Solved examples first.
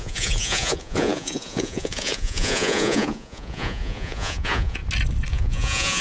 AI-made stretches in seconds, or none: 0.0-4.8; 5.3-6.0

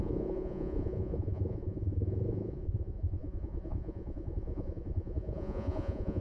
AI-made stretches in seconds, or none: 0.0-6.2

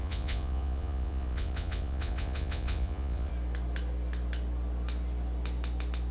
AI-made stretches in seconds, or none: 0.0-3.3

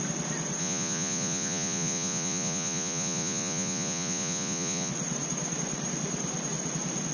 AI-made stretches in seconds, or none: 0.6-4.9

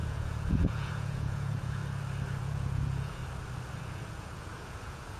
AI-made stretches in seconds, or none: 0.0-1.8; 2.4-3.2; 3.8-5.2